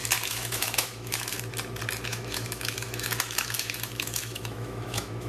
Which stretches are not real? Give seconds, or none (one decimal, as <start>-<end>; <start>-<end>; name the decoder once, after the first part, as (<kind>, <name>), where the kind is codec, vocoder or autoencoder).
0.0-1.4 (autoencoder, DAC-VAE); 2.1-5.3